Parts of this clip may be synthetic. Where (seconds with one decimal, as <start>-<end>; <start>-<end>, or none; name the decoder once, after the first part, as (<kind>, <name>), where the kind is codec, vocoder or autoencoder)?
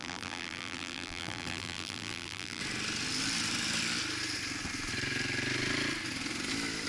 0.0-2.6 (vocoder, BigVGAN v2)